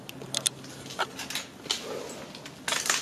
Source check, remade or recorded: recorded